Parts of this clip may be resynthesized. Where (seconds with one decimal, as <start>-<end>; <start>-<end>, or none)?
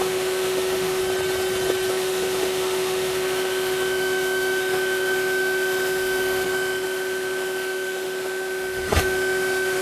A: 0.0-1.0; 1.9-9.8